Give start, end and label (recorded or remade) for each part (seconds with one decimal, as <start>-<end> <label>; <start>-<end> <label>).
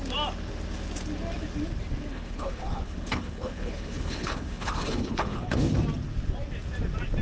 0.0-2.1 recorded; 2.1-5.7 remade; 5.7-7.2 recorded